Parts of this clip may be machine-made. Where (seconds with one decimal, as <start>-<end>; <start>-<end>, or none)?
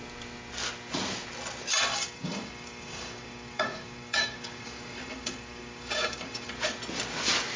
1.9-6.5